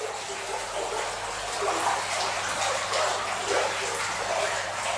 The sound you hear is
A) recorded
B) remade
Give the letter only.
A